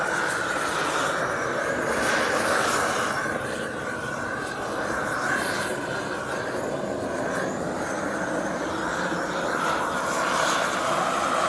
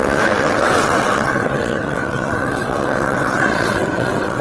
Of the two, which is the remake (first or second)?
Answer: second